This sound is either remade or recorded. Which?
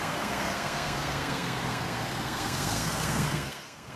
remade